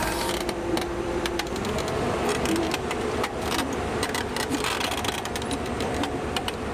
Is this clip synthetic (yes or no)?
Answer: yes